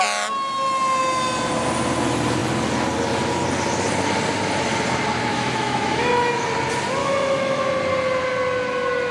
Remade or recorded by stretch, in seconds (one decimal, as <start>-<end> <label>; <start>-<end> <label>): 0.0-5.3 recorded; 5.3-6.1 remade; 6.1-7.0 recorded; 7.0-7.6 remade; 7.6-9.1 recorded